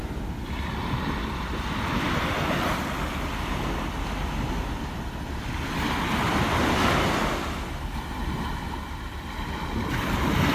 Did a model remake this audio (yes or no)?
no